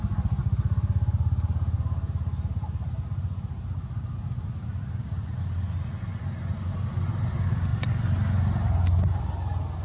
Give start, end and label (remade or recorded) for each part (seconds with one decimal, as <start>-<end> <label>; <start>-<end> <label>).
0.0-9.8 recorded